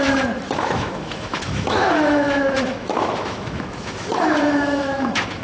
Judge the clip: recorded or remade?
remade